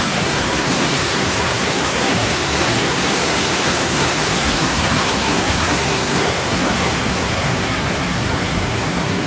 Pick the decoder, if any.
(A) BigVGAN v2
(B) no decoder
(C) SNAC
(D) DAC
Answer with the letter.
C